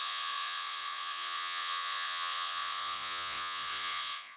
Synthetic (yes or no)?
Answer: yes